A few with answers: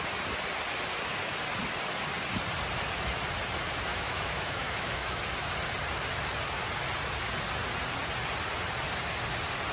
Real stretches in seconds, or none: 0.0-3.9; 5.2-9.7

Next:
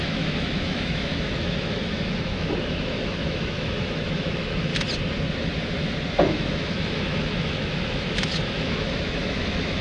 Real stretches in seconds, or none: 4.7-6.1

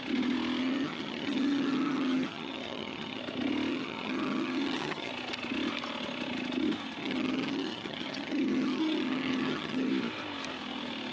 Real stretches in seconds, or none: 0.0-0.6; 3.2-3.7; 5.1-7.0; 9.9-11.1

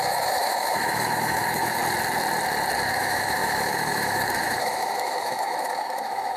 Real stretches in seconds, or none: 1.8-2.9

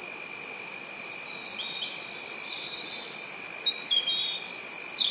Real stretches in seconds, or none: 0.0-5.1

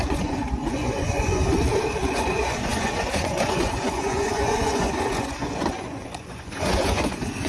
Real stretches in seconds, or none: 1.4-2.0